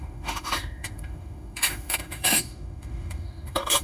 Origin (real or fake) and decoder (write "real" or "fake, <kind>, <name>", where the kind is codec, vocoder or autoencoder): fake, autoencoder, DAC-VAE